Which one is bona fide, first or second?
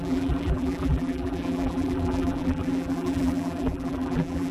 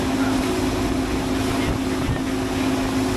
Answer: second